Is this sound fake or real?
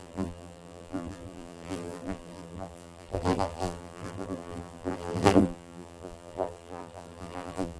fake